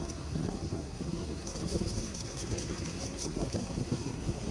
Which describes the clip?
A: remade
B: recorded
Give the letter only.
A